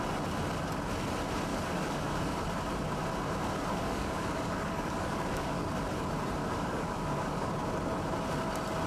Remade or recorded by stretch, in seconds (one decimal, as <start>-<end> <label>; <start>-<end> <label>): 0.0-1.5 recorded; 1.5-2.4 remade; 2.4-3.7 recorded; 3.7-5.6 remade; 5.6-6.4 recorded; 6.4-7.5 remade; 7.5-8.9 recorded

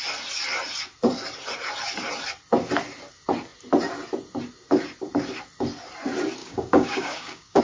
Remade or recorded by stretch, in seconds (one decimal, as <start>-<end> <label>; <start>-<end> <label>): 0.0-6.4 recorded; 6.4-7.6 remade

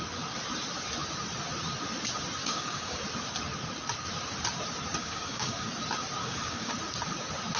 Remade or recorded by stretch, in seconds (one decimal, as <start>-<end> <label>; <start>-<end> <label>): 0.0-2.4 recorded; 2.4-3.0 remade; 3.0-5.0 recorded; 5.0-5.7 remade; 5.7-6.2 recorded; 6.2-6.7 remade; 6.7-7.6 recorded

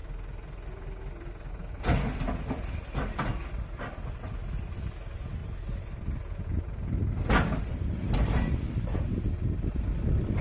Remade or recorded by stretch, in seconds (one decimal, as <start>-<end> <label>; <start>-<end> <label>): 0.0-10.4 recorded

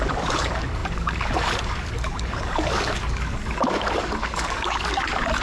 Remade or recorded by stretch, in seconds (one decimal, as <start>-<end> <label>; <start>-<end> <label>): 0.0-5.4 remade

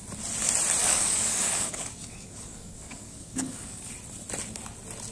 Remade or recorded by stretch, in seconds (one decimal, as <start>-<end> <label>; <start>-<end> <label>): 0.0-0.8 recorded; 0.8-3.9 remade; 3.9-5.1 recorded

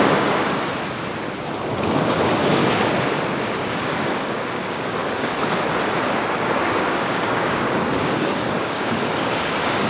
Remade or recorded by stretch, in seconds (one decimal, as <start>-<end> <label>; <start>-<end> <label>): 0.0-0.7 remade; 0.7-1.7 recorded; 1.7-2.6 remade; 2.6-3.4 recorded; 3.4-5.0 remade; 5.0-6.2 recorded; 6.2-9.9 remade

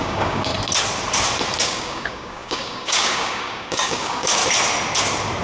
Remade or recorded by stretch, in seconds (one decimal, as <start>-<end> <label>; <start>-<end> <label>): 0.0-0.5 remade; 0.5-1.6 recorded; 1.6-4.4 remade; 4.4-5.4 recorded